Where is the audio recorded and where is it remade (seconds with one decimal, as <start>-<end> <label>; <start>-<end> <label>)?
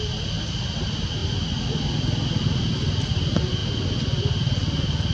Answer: 0.0-5.1 recorded